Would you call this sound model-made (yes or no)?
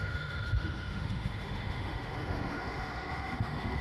yes